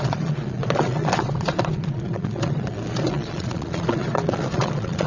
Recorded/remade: remade